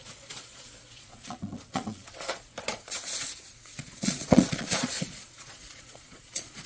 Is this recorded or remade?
remade